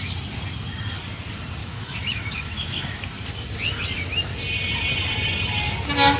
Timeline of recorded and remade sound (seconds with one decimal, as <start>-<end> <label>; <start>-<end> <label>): 0.0-1.6 recorded; 1.6-3.0 remade; 3.0-6.2 recorded